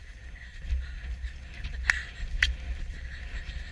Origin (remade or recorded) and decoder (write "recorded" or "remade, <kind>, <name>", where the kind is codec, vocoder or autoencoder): recorded